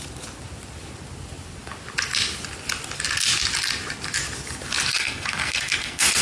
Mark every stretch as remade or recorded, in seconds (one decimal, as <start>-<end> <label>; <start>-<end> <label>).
0.0-4.9 recorded; 4.9-6.2 remade